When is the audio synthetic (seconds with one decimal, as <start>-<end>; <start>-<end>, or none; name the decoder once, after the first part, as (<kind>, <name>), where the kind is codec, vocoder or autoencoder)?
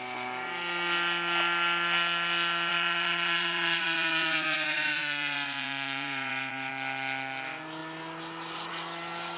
2.7-6.7 (vocoder, Vocos)